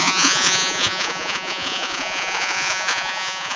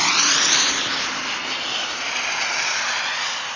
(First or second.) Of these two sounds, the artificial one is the first